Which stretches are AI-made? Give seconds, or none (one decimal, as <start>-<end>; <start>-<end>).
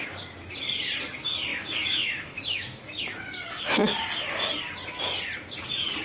1.5-3.0